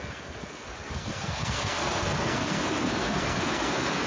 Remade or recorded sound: remade